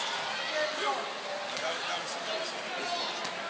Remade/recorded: recorded